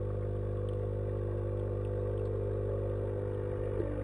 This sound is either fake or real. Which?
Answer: real